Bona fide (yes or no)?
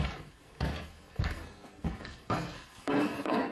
no